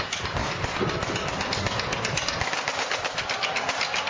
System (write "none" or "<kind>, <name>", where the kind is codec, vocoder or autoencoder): none